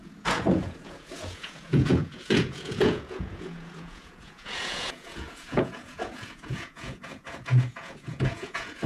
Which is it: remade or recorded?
remade